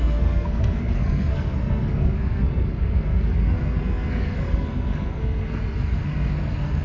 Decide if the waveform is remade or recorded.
remade